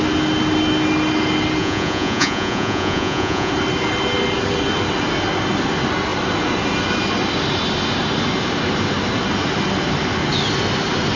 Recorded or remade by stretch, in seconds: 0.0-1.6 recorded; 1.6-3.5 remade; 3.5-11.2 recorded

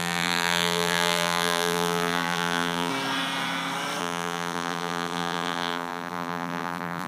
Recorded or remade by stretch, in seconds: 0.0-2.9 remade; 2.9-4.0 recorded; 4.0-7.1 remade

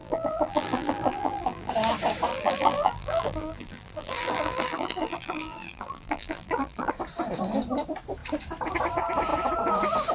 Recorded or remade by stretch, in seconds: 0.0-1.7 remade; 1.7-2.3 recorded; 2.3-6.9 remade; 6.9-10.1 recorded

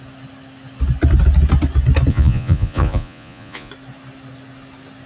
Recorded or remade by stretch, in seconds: 0.0-2.1 recorded; 2.1-3.7 remade; 3.7-5.1 recorded

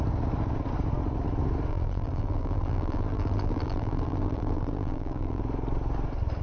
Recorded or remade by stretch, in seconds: 0.0-1.7 recorded; 1.7-5.4 remade; 5.4-6.4 recorded